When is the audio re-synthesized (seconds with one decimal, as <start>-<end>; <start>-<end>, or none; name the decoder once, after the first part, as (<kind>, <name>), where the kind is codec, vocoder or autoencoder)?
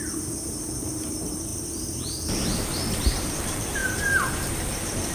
0.0-3.8 (vocoder, BigVGAN v2)